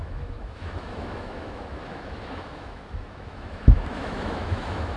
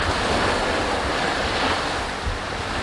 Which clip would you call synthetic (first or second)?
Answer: first